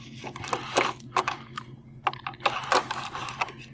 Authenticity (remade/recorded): recorded